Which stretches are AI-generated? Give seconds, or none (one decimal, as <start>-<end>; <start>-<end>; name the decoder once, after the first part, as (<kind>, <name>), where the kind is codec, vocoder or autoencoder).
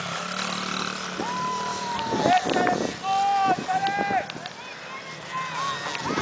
1.7-2.2 (vocoder, BigVGAN v2)